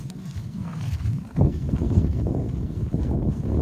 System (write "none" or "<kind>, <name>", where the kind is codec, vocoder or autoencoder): codec, SNAC